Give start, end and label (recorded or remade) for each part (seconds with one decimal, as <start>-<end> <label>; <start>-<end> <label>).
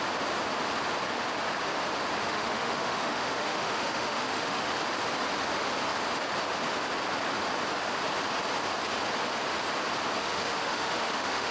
0.0-2.2 recorded; 2.2-4.7 remade; 4.7-10.2 recorded; 10.2-11.5 remade